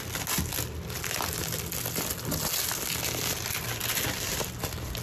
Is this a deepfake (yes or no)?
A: no